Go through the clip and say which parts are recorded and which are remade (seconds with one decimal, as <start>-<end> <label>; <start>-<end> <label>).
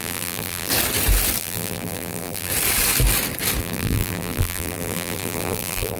0.0-0.7 remade; 0.7-1.4 recorded; 1.4-2.5 remade; 2.5-3.6 recorded; 3.6-6.0 remade